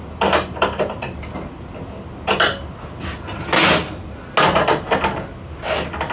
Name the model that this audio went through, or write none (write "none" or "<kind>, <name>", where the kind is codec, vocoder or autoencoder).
none